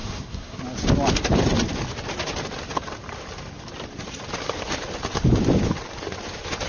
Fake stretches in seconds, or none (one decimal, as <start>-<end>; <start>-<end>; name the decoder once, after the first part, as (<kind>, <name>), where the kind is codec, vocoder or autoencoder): 0.0-0.6 (codec, SNAC)